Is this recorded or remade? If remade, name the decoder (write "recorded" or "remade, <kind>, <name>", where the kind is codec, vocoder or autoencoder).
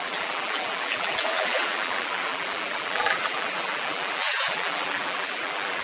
remade, vocoder, BigVGAN v2